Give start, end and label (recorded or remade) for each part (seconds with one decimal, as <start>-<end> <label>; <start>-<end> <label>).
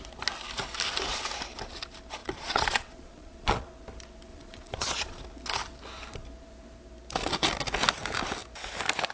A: 0.0-2.2 recorded; 2.2-3.7 remade; 3.7-4.3 recorded; 4.3-5.2 remade; 5.2-9.1 recorded